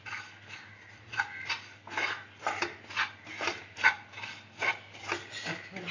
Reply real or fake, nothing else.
real